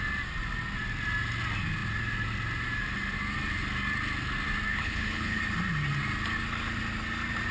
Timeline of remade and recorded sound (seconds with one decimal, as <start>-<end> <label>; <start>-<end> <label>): 0.0-4.7 recorded; 4.7-5.4 remade; 5.4-7.5 recorded